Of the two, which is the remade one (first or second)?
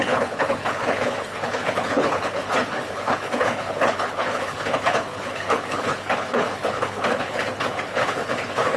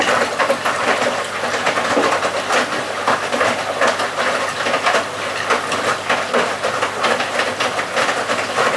first